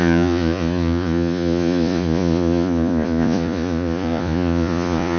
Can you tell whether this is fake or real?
fake